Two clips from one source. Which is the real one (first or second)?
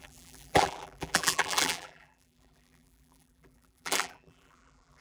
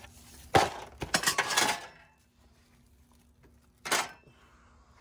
second